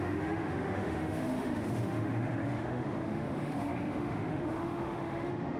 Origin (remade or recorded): remade